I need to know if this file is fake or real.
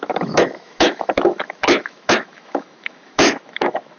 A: fake